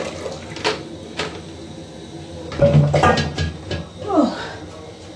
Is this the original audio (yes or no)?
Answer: yes